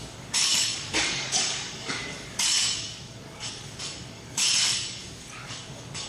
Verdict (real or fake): fake